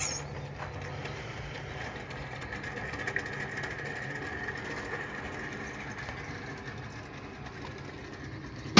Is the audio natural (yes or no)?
yes